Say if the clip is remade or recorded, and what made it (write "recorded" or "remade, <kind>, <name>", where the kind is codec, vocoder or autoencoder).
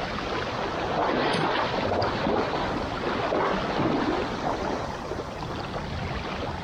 recorded